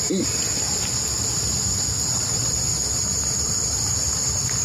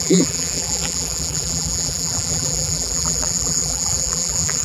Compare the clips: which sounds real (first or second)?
first